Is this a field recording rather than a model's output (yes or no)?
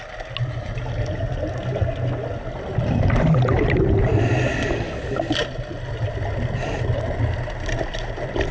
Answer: yes